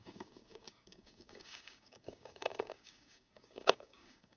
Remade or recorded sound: remade